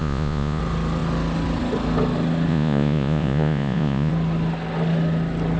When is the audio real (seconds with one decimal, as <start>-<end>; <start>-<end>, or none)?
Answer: 0.6-2.5; 4.1-5.6